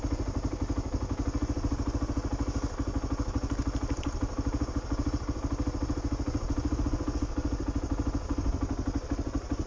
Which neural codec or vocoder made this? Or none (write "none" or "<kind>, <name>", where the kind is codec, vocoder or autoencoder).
none